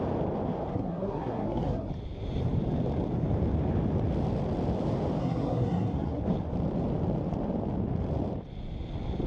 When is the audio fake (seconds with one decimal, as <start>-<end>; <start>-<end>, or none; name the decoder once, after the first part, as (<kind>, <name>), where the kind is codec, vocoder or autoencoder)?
0.7-1.9 (codec, SNAC); 5.2-6.2